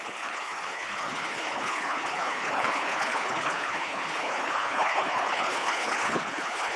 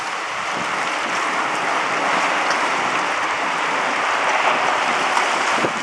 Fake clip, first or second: first